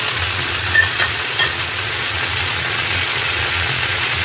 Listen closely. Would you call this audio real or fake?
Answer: fake